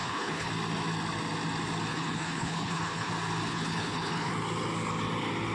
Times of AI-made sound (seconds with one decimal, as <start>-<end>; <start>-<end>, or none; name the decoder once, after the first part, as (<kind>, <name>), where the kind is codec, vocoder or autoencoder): 0.0-0.5 (codec, HILCodec); 1.9-3.1; 3.5-4.3